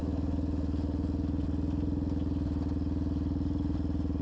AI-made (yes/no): no